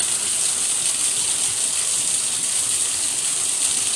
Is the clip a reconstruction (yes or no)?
no